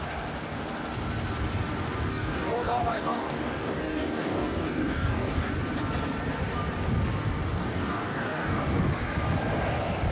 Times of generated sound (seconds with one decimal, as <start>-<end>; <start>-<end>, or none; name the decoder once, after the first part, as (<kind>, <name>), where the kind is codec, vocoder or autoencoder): 2.1-5.5 (codec, DAC); 7.5-8.8